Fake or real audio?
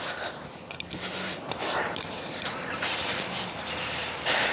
fake